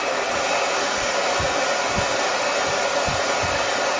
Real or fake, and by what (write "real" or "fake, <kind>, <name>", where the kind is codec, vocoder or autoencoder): real